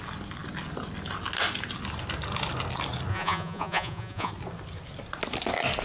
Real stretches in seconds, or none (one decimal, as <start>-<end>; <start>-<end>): 0.0-3.1; 4.3-5.8